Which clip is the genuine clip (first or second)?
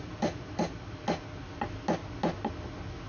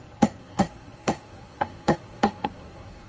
first